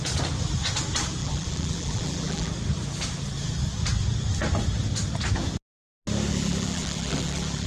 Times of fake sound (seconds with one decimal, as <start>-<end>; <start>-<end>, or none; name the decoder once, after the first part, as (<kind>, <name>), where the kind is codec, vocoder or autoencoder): 1.2-2.5 (vocoder, BigVGAN v2); 6.3-7.7